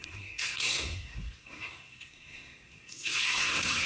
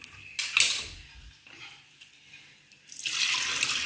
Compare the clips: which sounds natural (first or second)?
second